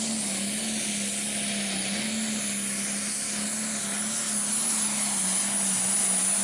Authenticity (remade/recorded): recorded